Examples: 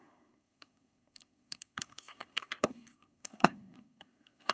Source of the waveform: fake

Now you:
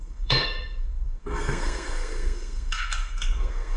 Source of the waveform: fake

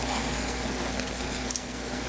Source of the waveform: fake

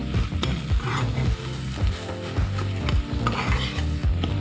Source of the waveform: real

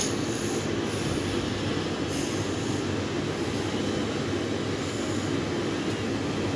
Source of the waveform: real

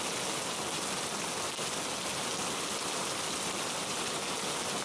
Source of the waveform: real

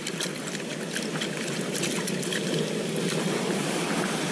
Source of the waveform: real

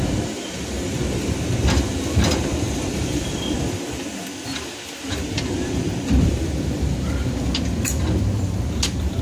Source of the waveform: real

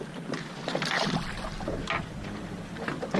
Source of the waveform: real